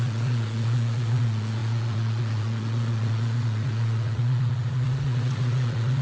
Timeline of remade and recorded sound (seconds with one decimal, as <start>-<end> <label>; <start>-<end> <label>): 0.0-6.0 remade